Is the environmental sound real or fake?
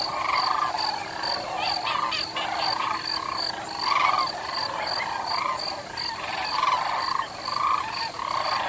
real